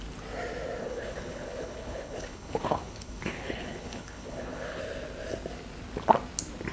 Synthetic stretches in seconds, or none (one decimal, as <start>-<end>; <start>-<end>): 0.8-4.8